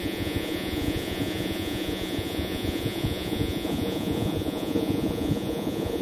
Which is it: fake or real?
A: fake